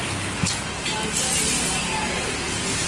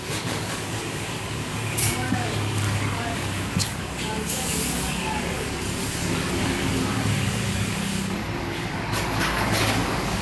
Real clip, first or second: first